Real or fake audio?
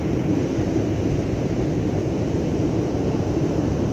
fake